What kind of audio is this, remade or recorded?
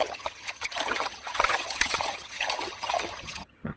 remade